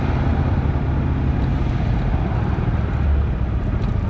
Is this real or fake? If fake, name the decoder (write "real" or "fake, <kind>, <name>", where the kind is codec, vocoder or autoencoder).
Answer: real